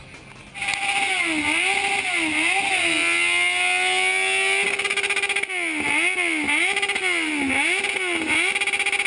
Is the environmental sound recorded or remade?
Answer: recorded